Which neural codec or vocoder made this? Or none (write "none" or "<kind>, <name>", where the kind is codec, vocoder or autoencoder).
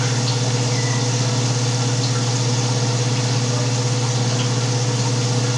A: none